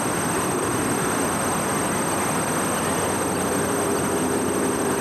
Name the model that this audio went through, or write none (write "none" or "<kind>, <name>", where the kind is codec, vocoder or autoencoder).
none